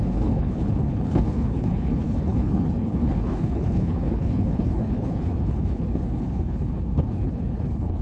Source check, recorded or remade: remade